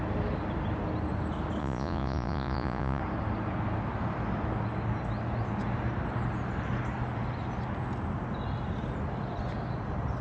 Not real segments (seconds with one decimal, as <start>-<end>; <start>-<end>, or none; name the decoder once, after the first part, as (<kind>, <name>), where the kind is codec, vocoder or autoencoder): 1.6-3.0 (vocoder, Vocos)